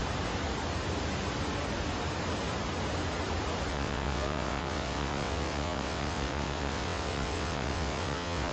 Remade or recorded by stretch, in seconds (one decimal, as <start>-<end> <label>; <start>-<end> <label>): 0.0-3.7 recorded; 3.7-8.5 remade